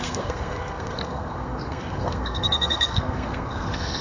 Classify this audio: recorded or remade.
remade